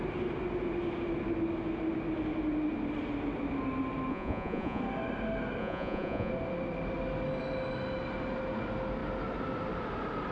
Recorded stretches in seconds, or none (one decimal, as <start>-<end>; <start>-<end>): 0.0-4.1; 4.8-5.6; 6.3-10.3